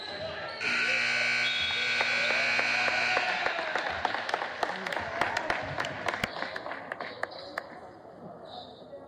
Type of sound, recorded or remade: recorded